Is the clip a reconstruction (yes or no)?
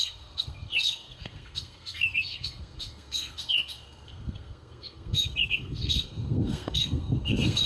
yes